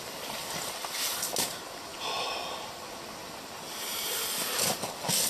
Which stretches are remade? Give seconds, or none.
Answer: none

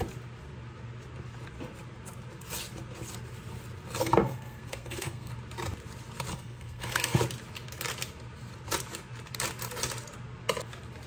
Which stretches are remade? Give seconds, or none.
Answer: 4.0-5.3 (codec, SNAC); 6.3-7.2

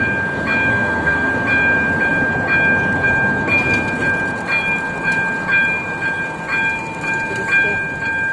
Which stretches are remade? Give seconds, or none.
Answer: 0.7-1.3 (codec, SNAC)

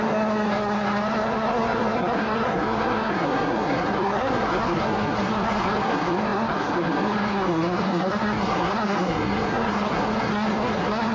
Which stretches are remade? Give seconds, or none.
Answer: 0.0-11.1 (codec, SNAC)

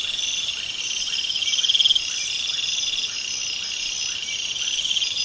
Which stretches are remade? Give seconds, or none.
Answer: none

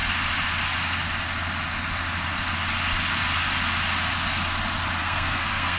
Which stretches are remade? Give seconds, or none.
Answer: 5.0-5.8 (codec, SNAC)